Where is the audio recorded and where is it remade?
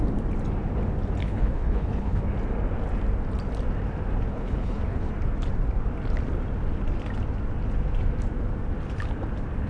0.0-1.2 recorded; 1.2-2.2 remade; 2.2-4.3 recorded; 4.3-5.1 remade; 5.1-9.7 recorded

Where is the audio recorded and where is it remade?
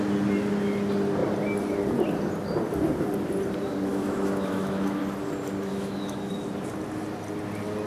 0.0-3.9 recorded; 3.9-5.0 remade; 5.0-5.7 recorded; 5.7-6.3 remade; 6.3-7.9 recorded